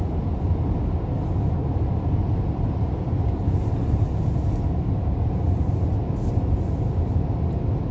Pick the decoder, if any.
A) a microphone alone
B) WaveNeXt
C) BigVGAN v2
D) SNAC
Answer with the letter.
A